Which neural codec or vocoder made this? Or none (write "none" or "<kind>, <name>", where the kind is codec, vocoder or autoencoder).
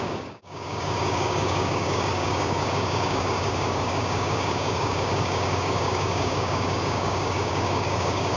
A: codec, DAC